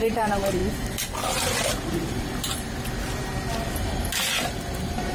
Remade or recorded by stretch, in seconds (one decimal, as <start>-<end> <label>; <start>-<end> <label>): 0.0-0.6 remade; 0.6-3.7 recorded; 3.7-5.1 remade